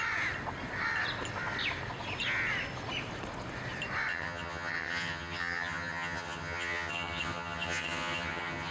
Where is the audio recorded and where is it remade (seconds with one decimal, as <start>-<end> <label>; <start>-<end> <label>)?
0.0-4.1 recorded; 4.1-8.7 remade